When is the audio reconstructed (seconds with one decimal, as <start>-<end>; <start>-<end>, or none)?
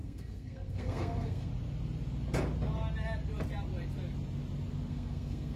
0.0-1.5; 4.9-5.6